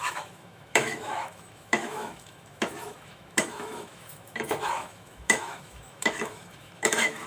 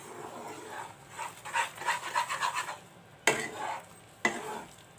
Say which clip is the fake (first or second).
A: first